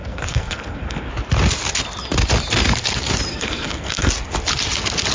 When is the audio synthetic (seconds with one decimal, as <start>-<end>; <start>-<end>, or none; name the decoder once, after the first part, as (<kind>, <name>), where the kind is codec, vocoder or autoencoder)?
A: 0.0-1.1 (codec, SNAC); 3.3-4.1